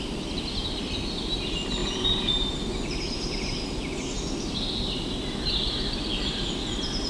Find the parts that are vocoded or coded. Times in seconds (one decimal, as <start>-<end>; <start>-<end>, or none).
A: 1.8-2.3